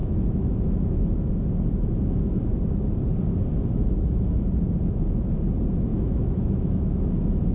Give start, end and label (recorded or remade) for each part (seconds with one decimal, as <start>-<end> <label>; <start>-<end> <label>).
0.0-1.3 remade; 1.3-5.9 recorded; 5.9-7.1 remade; 7.1-7.5 recorded